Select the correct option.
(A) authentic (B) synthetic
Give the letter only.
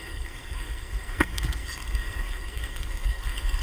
B